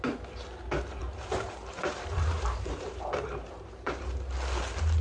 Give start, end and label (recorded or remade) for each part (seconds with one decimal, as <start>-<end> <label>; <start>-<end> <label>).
0.0-1.0 recorded; 1.0-4.0 remade; 4.0-5.0 recorded